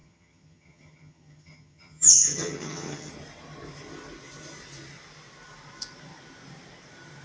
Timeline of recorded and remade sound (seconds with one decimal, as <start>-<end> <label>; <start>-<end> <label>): 0.0-3.1 remade; 3.1-7.2 recorded